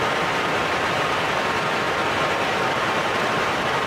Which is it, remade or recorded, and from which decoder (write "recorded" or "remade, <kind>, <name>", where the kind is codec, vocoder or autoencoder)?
recorded